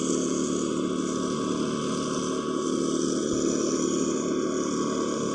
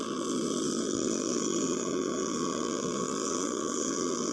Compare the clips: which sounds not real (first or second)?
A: second